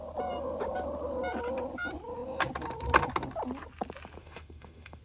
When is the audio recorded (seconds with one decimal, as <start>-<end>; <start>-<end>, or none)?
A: 0.0-4.2